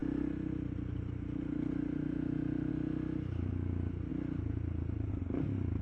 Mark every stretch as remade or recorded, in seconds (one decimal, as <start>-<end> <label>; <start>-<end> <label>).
0.0-5.8 recorded